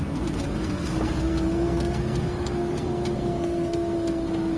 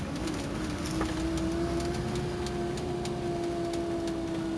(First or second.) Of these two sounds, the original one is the second